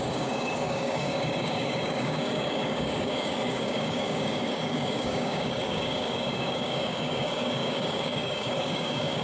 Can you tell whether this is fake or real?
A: fake